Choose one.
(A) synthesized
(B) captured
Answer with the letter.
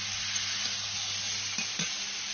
B